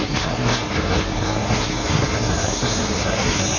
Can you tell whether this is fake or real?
fake